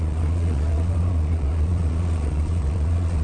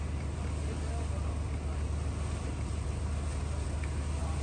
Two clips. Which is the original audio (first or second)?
second